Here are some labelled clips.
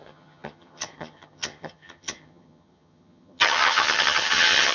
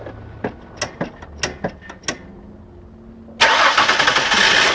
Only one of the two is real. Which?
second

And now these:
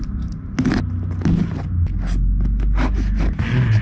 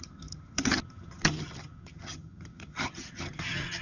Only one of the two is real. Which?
first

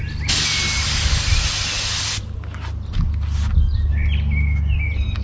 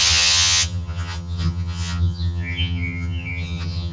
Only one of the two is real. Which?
first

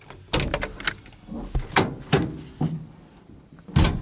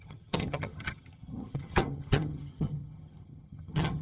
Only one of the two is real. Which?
first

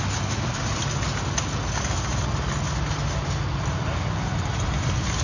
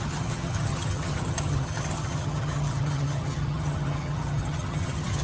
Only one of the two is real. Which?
first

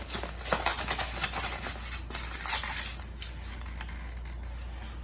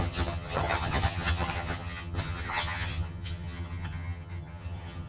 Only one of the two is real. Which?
first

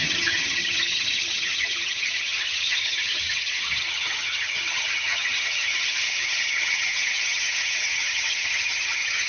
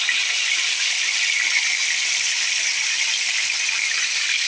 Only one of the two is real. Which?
second